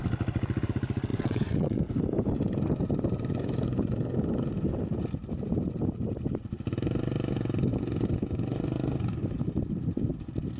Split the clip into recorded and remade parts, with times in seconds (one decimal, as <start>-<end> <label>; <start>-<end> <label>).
0.0-1.1 recorded; 1.1-1.8 remade; 1.8-10.6 recorded